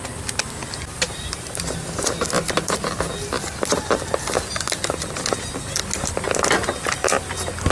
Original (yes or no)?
yes